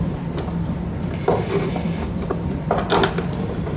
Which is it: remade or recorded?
recorded